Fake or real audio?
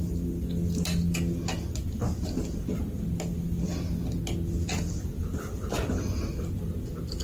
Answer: real